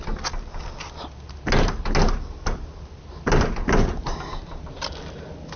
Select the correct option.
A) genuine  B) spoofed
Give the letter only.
A